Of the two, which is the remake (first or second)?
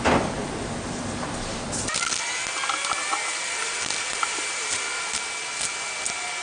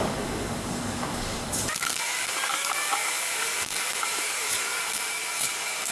second